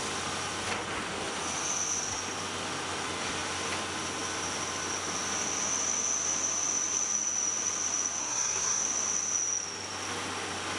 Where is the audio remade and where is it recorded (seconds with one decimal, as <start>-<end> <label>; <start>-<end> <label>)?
0.0-8.2 recorded; 8.2-8.8 remade; 8.8-10.8 recorded